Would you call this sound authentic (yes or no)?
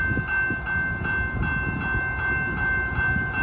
yes